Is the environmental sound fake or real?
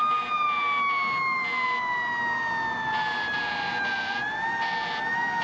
real